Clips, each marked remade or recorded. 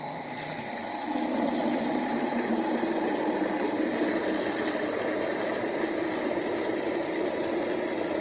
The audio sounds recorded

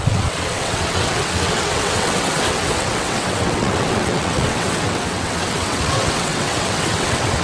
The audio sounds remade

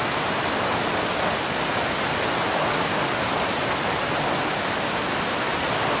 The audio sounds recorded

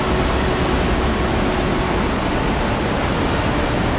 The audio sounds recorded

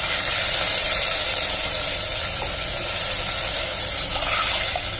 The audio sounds recorded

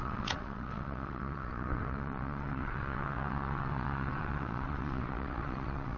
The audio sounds remade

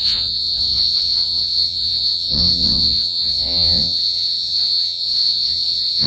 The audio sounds remade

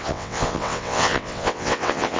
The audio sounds remade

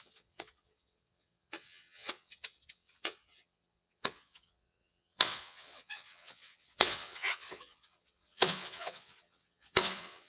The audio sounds remade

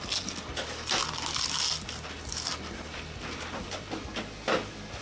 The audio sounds recorded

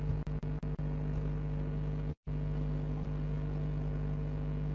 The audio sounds recorded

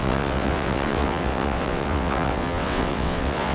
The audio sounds remade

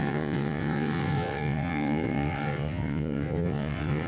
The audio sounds remade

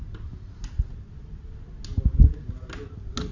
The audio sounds recorded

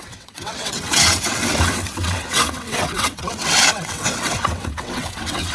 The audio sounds remade